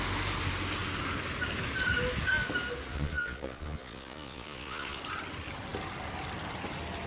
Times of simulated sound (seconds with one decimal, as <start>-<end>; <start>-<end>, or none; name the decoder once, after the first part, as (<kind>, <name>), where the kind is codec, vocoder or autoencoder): 2.9-5.0 (vocoder, Vocos)